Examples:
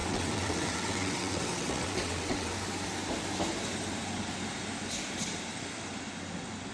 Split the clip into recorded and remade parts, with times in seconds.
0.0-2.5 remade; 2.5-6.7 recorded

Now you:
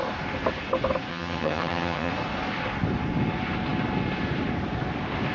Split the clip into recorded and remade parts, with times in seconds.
0.0-1.1 recorded; 1.1-2.1 remade; 2.1-5.3 recorded